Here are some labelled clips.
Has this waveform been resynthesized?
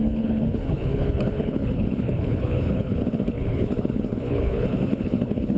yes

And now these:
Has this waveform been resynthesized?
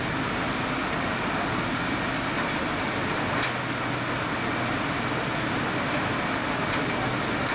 no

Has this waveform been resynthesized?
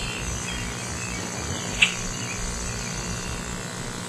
no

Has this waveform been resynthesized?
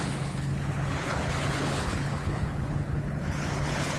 yes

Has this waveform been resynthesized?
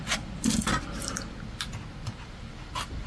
no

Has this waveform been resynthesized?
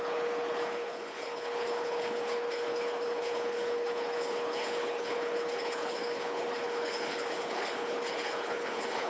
yes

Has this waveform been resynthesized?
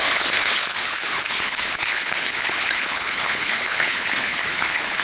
yes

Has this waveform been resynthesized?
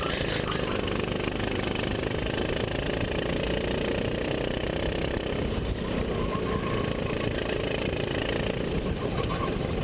no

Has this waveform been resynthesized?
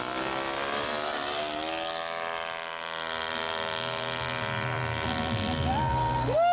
no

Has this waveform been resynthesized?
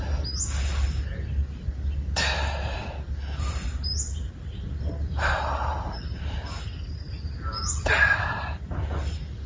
no